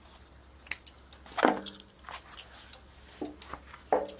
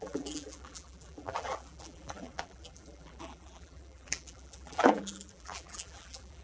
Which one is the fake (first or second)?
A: second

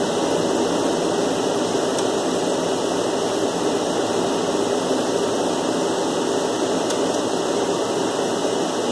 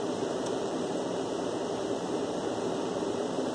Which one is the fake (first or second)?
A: second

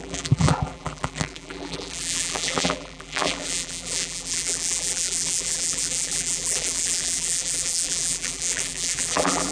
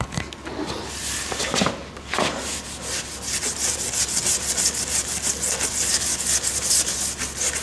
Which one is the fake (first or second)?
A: first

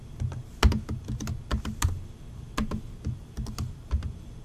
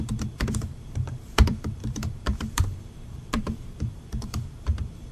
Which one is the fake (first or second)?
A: second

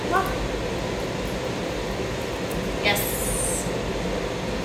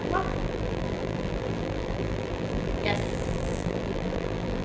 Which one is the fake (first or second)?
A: second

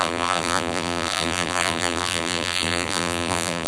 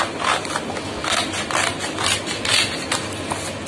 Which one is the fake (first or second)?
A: first